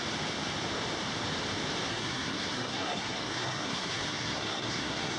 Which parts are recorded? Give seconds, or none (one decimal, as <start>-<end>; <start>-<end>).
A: 0.0-1.9